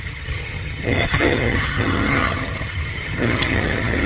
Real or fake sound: fake